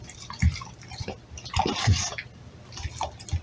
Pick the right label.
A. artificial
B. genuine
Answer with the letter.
B